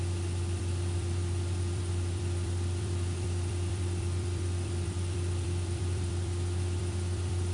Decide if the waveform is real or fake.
fake